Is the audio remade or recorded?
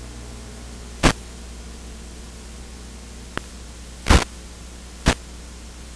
recorded